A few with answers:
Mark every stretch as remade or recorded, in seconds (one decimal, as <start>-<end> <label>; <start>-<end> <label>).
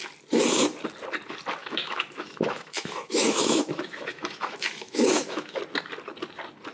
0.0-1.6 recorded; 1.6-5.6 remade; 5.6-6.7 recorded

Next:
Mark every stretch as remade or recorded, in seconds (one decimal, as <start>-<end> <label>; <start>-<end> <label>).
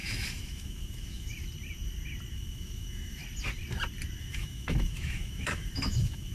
0.0-1.3 remade; 1.3-2.3 recorded; 2.3-3.2 remade; 3.2-4.2 recorded; 4.2-6.3 remade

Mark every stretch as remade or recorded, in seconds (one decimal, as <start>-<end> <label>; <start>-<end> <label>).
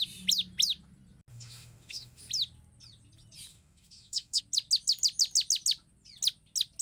0.0-1.3 recorded; 1.3-2.2 remade; 2.2-3.5 recorded; 3.5-4.4 remade; 4.4-6.8 recorded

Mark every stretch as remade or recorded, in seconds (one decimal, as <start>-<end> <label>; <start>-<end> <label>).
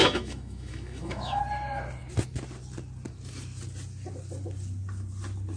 0.0-1.4 remade; 1.4-5.6 recorded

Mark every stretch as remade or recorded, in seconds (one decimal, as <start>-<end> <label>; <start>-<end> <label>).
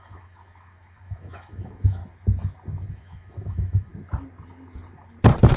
0.0-2.0 remade; 2.0-2.9 recorded; 2.9-3.9 remade; 3.9-5.6 recorded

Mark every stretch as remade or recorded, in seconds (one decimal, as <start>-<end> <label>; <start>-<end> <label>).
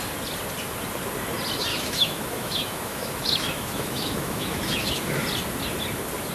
0.0-1.7 recorded; 1.7-5.2 remade; 5.2-6.3 recorded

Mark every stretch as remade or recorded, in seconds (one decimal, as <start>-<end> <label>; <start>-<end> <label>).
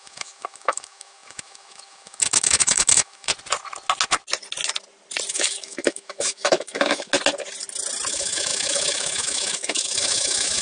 0.0-3.3 remade; 3.3-5.3 recorded; 5.3-7.1 remade; 7.1-8.1 recorded; 8.1-10.6 remade